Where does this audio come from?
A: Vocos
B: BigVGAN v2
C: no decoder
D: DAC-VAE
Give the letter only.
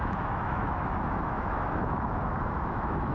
D